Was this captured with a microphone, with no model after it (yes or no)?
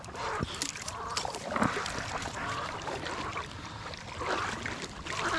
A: yes